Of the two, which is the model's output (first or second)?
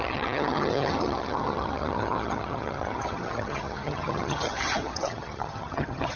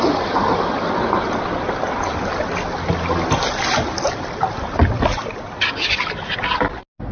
first